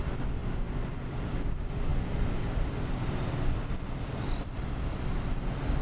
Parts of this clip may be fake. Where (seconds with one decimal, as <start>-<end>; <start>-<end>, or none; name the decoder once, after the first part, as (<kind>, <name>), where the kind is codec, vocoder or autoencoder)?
none